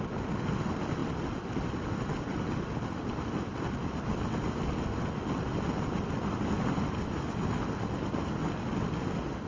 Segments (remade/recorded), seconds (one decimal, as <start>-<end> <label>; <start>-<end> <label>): 0.0-9.5 recorded